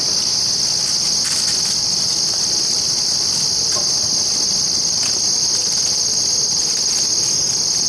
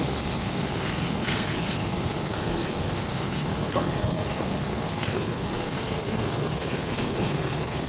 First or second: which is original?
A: first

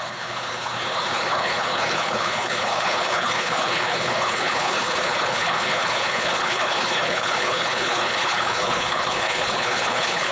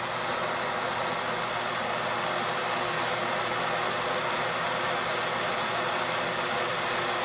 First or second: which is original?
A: second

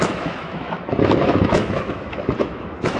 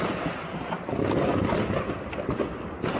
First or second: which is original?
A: second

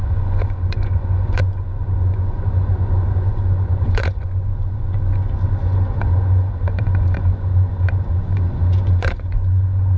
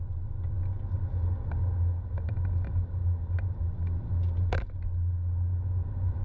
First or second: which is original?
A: second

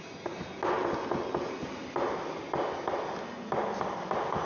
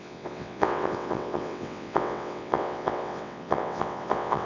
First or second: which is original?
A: first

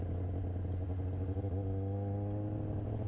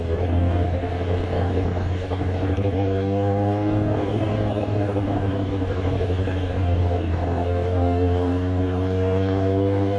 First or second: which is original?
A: first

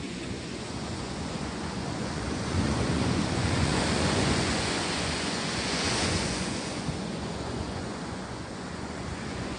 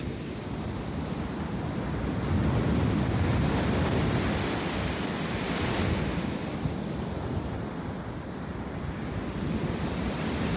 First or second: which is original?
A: second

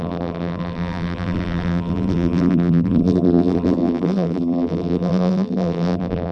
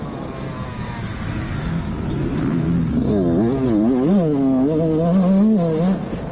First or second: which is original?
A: second